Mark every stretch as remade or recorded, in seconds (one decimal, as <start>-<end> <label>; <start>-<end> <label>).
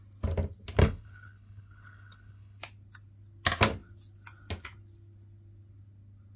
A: 0.0-0.8 recorded; 0.8-2.6 remade; 2.6-6.4 recorded